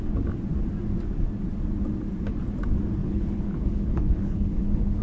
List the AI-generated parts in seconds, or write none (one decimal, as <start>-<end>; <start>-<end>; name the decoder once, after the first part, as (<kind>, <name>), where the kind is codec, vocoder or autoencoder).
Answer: 3.0-5.0 (codec, HILCodec)